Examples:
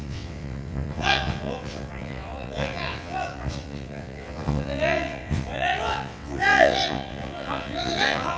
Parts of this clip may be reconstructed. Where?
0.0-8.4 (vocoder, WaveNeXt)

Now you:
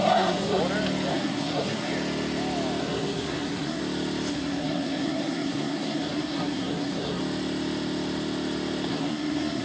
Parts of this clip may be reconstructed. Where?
0.0-0.6 (codec, SNAC); 1.1-1.9; 2.8-3.8; 4.3-7.2; 8.9-9.6

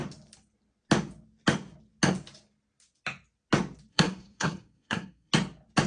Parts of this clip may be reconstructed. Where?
3.9-5.3 (codec, SNAC)

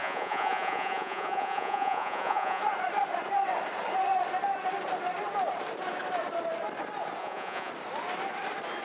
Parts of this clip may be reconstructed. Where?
0.0-2.6 (vocoder, Vocos); 7.2-7.7